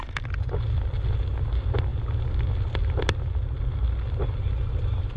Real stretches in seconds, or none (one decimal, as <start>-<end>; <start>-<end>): 0.0-5.2